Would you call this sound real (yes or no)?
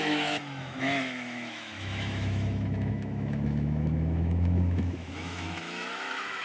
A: no